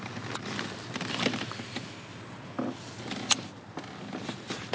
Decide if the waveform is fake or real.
real